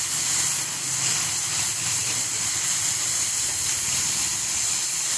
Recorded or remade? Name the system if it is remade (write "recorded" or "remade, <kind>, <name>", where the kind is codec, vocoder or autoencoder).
recorded